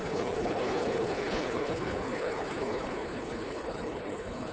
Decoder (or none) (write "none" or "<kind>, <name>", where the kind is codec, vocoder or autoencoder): codec, HILCodec